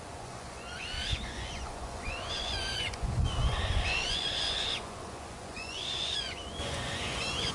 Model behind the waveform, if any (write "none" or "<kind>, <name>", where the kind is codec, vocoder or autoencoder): vocoder, Vocos